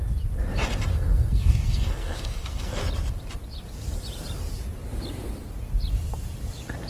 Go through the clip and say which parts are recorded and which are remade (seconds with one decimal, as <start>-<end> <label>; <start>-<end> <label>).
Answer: 0.0-0.9 recorded; 0.9-2.8 remade; 2.8-6.9 recorded